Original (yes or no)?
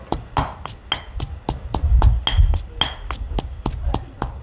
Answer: yes